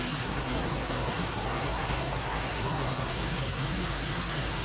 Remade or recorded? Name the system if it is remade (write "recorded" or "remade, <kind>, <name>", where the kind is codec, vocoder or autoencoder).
remade, codec, SNAC